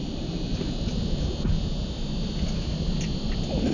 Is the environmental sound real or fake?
real